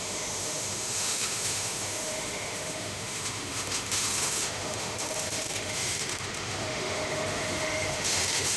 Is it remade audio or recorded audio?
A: remade